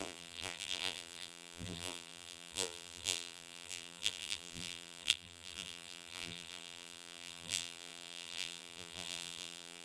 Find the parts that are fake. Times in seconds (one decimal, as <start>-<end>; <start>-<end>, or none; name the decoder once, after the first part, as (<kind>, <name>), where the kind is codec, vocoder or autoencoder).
0.0-9.8 (vocoder, BigVGAN v2)

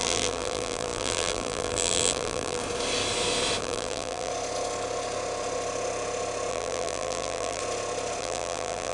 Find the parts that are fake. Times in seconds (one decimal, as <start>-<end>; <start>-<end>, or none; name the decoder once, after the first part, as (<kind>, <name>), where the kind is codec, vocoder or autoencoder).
0.0-2.6 (vocoder, BigVGAN v2); 3.6-4.3; 6.5-7.6; 8.2-8.9

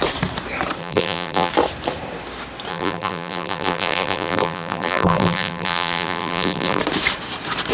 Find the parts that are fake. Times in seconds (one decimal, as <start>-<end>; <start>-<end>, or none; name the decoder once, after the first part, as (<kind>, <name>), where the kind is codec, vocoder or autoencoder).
0.8-1.5 (vocoder, BigVGAN v2); 2.7-6.8

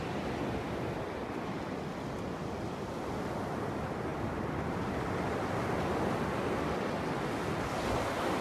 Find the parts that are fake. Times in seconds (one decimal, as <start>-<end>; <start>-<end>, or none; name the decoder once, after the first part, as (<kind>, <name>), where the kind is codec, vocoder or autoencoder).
none

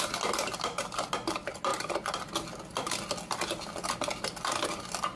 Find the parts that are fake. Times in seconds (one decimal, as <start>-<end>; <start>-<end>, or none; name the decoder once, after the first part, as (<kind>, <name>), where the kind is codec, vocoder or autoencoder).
none

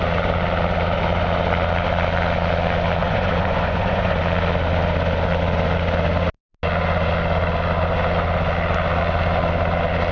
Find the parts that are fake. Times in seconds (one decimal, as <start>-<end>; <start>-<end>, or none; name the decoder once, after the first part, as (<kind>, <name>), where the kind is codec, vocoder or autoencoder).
3.0-4.2 (vocoder, Vocos)

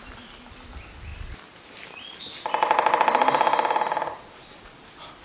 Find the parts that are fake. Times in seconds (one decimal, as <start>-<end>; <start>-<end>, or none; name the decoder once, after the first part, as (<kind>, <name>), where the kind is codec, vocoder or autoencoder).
1.1-4.2 (vocoder, BigVGAN v2)